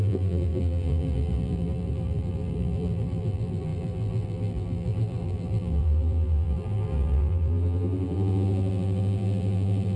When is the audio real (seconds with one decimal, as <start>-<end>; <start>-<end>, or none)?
none